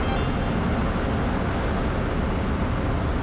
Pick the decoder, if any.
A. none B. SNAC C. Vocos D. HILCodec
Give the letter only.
A